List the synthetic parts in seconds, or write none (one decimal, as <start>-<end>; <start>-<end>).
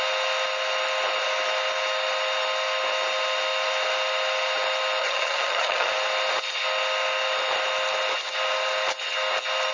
5.0-5.9